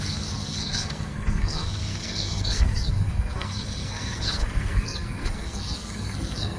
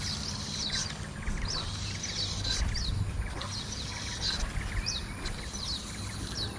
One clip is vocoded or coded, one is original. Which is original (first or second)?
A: second